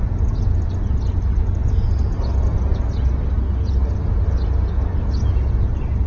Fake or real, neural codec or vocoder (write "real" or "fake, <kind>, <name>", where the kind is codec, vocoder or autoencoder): real